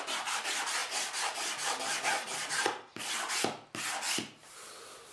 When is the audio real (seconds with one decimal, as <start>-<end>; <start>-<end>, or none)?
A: 0.0-5.1